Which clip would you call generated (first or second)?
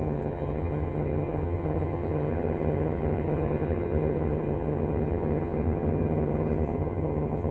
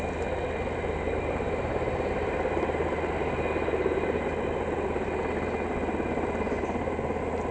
first